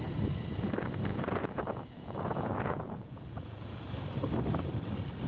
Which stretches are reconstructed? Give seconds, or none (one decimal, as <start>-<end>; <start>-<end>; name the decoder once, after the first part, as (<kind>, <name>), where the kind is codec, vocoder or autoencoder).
1.1-3.8 (vocoder, Vocos)